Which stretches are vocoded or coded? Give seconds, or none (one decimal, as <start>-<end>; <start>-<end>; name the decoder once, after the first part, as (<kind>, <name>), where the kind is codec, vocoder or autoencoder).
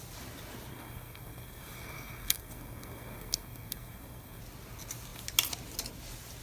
0.7-4.4 (codec, SNAC)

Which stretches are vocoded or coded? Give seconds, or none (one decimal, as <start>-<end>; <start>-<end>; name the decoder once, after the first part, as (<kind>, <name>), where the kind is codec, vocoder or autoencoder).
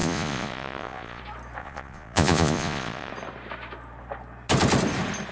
0.0-1.2 (vocoder, Vocos); 1.6-3.1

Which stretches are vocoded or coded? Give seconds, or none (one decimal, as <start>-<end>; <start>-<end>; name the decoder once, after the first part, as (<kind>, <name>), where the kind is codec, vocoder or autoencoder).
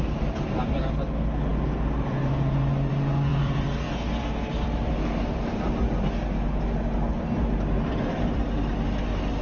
3.3-5.0 (vocoder, BigVGAN v2)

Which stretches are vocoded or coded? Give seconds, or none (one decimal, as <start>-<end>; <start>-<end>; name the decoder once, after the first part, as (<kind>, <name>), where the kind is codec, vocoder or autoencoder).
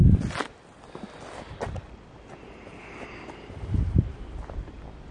3.1-5.1 (vocoder, BigVGAN v2)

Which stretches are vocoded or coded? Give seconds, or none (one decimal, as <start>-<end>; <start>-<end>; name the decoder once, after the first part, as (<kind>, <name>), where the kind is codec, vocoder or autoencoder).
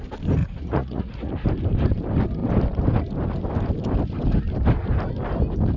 0.4-1.3 (vocoder, Vocos)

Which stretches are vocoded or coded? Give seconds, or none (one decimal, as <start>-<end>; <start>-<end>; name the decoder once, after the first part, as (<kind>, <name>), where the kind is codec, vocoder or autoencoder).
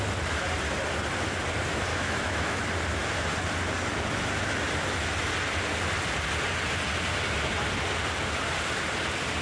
1.9-2.6 (autoencoder, DAC-VAE)